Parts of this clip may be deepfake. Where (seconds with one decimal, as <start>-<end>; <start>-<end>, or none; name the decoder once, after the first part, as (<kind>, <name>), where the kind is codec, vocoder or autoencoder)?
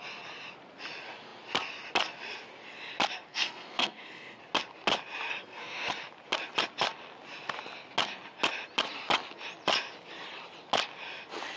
3.3-4.4 (codec, SNAC); 5.3-5.9